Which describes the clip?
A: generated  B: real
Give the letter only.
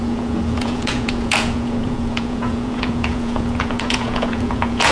A